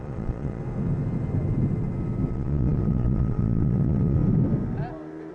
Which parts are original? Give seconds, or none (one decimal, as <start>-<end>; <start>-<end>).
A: 0.6-2.3; 4.2-5.3